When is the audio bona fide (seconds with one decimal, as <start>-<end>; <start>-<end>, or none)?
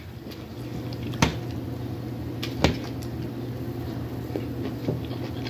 0.0-5.5